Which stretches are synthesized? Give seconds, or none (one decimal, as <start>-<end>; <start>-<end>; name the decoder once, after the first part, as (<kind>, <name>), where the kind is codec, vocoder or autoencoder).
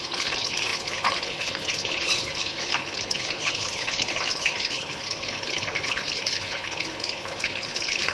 0.0-8.1 (codec, HILCodec)